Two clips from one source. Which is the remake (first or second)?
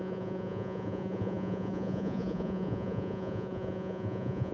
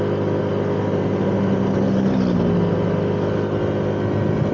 first